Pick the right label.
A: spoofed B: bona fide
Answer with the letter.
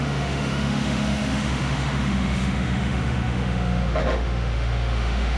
A